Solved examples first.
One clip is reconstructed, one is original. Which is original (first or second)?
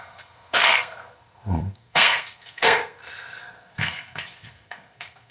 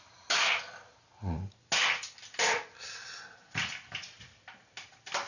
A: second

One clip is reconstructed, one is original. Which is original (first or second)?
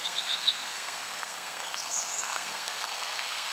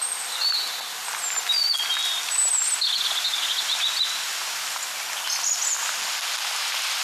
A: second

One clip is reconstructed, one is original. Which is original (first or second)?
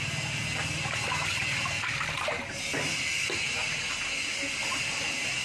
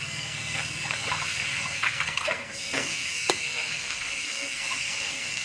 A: first